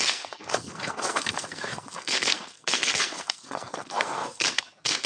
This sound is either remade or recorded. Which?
remade